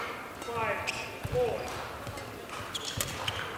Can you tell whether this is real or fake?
real